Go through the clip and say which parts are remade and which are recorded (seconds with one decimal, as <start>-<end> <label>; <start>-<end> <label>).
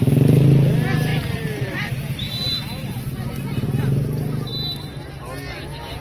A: 0.0-1.1 recorded; 1.1-3.0 remade; 3.0-4.5 recorded; 4.5-5.1 remade; 5.1-6.0 recorded